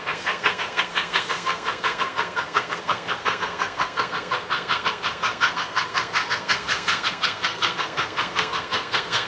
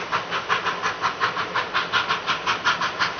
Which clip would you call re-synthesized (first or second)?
first